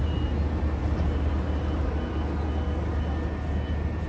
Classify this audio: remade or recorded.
recorded